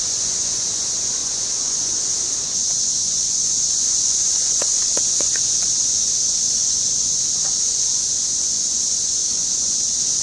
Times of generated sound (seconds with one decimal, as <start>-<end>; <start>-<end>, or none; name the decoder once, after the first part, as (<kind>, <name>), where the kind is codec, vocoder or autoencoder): 0.0-10.2 (vocoder, Vocos)